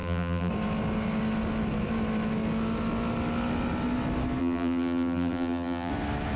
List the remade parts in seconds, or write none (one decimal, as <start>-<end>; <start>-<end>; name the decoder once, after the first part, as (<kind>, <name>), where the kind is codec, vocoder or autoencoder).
0.0-0.5 (vocoder, BigVGAN v2); 4.4-5.9